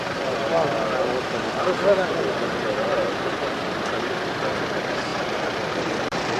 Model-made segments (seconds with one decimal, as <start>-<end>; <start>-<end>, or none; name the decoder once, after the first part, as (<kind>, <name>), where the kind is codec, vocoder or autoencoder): 0.0-0.5 (vocoder, BigVGAN v2); 4.3-6.4